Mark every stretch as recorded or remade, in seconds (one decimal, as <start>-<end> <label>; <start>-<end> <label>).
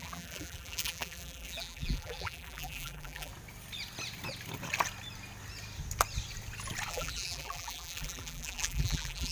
0.0-3.3 remade; 3.3-6.9 recorded; 6.9-9.3 remade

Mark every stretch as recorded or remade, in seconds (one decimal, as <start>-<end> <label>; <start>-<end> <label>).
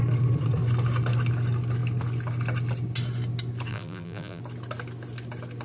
0.0-3.7 recorded; 3.7-4.4 remade; 4.4-5.6 recorded